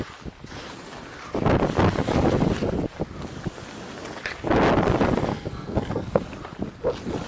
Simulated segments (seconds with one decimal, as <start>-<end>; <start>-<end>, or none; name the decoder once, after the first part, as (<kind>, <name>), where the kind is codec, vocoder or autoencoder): 5.3-6.2 (codec, SNAC)